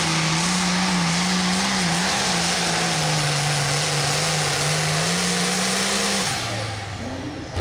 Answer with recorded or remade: recorded